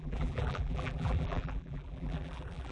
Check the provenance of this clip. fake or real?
fake